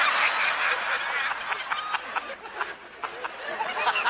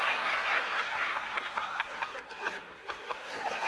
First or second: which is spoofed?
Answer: second